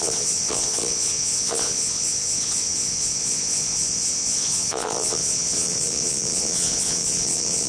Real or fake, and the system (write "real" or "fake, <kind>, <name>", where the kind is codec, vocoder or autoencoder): fake, vocoder, Vocos